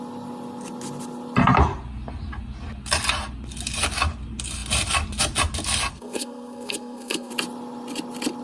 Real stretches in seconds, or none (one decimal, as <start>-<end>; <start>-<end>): 0.0-5.9; 7.3-8.4